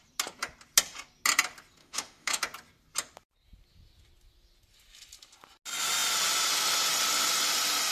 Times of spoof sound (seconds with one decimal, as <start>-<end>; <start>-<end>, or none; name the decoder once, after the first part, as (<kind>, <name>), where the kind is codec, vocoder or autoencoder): 1.8-2.4 (autoencoder, DAC-VAE)